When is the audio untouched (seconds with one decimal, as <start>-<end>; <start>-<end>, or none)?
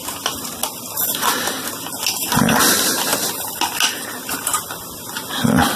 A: 0.0-5.8